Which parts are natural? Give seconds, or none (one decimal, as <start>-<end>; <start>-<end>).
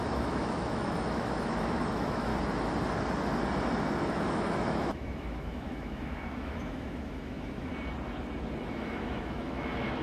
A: 2.3-4.0; 7.7-8.6